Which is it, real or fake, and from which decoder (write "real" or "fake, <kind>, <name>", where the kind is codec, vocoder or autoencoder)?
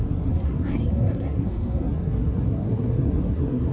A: fake, codec, SNAC